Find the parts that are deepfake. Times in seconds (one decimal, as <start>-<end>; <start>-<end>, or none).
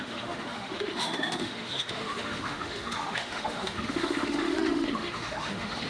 0.0-5.9